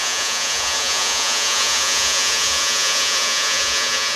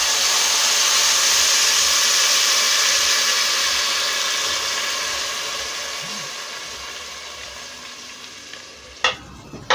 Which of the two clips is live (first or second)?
second